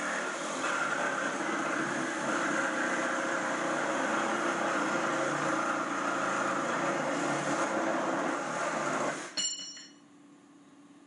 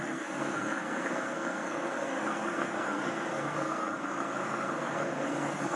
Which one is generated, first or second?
second